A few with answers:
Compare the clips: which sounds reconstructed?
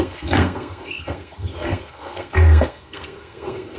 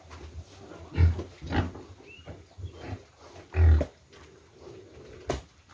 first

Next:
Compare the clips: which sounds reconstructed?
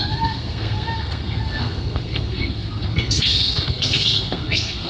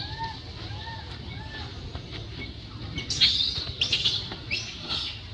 first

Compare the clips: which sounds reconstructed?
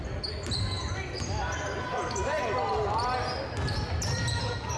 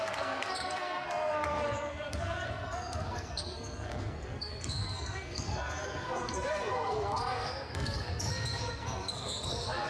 second